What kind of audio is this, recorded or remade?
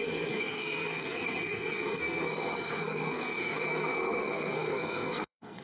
remade